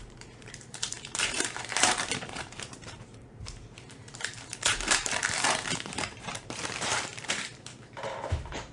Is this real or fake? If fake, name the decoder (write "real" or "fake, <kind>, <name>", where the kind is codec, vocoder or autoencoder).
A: fake, vocoder, BigVGAN v2